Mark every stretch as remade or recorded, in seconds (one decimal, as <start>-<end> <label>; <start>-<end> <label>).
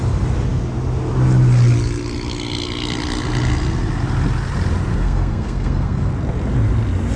0.0-4.9 recorded; 4.9-6.1 remade; 6.1-7.2 recorded